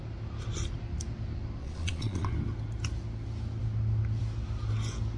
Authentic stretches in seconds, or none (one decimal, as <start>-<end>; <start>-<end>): 0.0-1.6; 2.3-5.2